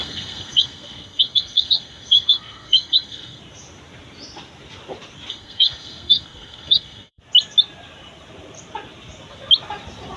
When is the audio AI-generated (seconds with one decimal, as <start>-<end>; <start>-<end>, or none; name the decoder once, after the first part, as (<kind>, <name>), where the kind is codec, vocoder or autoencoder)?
0.0-3.4 (codec, SNAC); 5.3-7.2